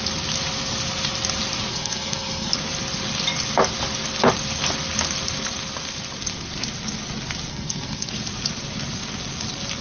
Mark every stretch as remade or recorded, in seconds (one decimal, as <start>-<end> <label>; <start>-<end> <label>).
0.0-1.7 recorded; 1.7-2.5 remade; 2.5-7.5 recorded; 7.5-8.1 remade; 8.1-9.8 recorded